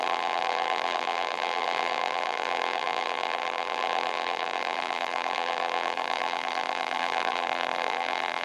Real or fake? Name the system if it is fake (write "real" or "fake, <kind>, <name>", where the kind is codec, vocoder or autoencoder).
fake, vocoder, BigVGAN v2